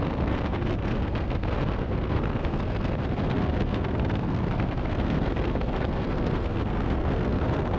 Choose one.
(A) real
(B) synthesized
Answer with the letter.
B